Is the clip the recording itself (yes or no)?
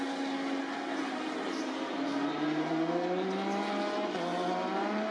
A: yes